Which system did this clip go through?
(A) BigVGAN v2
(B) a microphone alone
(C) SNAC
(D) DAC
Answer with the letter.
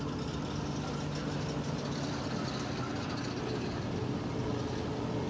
B